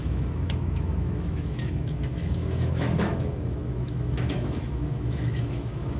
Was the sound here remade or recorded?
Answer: remade